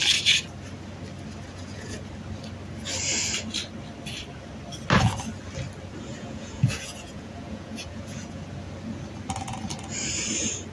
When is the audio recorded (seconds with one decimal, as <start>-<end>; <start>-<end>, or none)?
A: 0.0-1.5; 2.1-6.1; 8.4-10.7